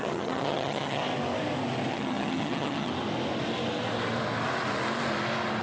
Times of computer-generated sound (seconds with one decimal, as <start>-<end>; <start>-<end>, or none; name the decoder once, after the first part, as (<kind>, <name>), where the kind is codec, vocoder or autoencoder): 0.0-1.0 (vocoder, HiFi-GAN); 1.9-2.9